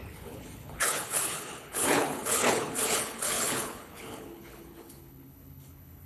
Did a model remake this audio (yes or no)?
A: yes